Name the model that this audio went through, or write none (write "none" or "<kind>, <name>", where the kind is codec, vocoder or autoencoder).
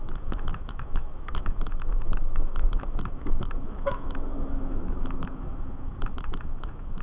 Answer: autoencoder, DAC-VAE